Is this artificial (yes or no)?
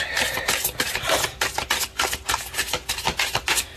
no